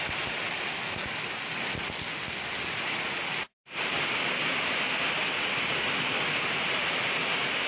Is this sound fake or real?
real